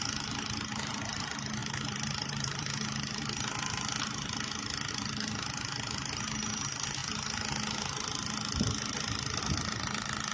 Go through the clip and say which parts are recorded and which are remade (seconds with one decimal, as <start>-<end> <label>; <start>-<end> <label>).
0.0-1.6 recorded; 1.6-4.9 remade; 4.9-10.3 recorded